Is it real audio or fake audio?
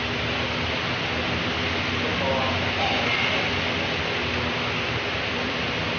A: real